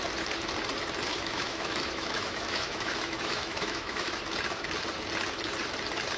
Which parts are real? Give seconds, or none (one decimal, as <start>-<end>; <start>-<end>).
0.0-1.1; 4.2-6.2